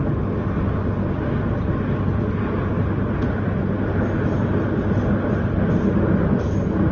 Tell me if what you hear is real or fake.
real